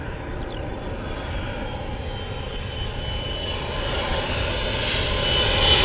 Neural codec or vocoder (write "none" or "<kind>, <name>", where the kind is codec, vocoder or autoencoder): none